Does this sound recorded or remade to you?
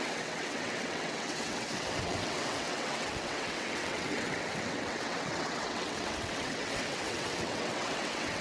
remade